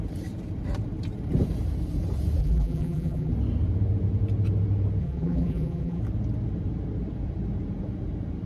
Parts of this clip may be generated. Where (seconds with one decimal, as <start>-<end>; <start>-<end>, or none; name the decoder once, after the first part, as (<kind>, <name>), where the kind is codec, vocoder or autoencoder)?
2.4-3.3 (vocoder, BigVGAN v2); 5.0-6.0